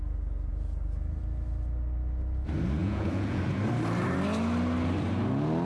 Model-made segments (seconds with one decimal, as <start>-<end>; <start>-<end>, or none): 2.8-3.4